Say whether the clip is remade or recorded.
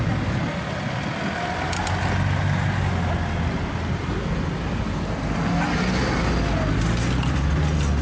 recorded